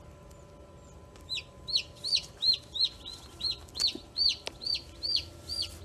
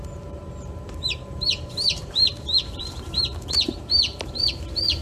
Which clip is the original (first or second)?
first